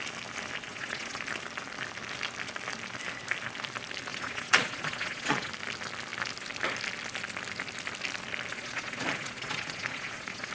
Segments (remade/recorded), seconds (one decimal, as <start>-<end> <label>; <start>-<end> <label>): 0.0-0.7 recorded; 0.7-1.2 remade; 1.2-4.1 recorded; 4.1-5.5 remade; 5.5-8.5 recorded; 8.5-10.5 remade